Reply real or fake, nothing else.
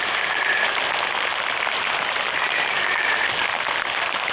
real